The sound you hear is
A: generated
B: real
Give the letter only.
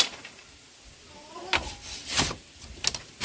B